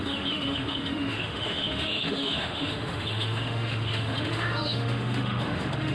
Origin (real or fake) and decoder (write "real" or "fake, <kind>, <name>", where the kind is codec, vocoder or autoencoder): fake, autoencoder, DAC-VAE